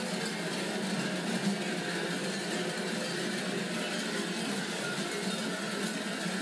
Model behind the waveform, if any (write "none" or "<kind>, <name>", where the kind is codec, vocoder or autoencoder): none